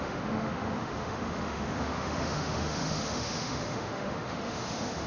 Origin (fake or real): fake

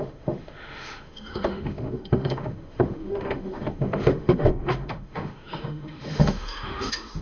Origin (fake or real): fake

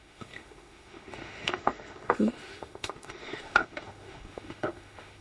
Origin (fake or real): fake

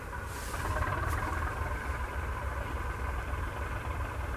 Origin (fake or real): real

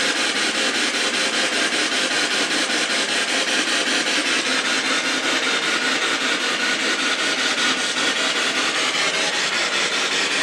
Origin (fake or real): real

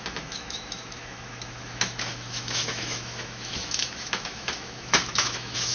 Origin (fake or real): fake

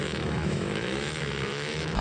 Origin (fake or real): fake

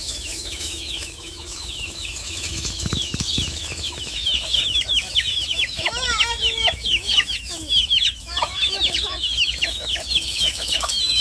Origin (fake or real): fake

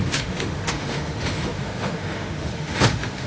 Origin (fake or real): fake